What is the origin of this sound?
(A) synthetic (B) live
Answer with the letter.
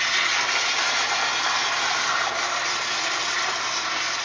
B